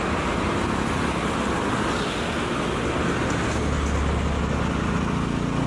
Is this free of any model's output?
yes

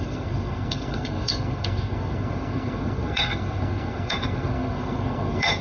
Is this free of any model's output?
no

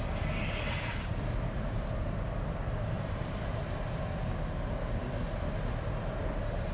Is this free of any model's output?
yes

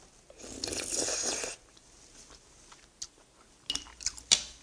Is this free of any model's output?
yes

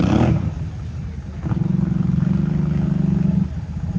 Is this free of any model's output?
yes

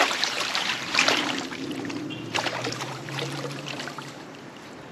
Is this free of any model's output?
no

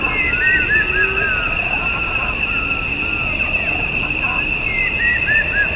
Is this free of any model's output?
yes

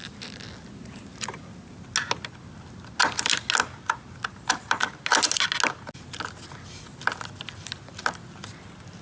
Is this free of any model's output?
yes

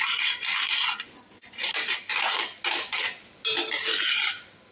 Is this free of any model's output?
yes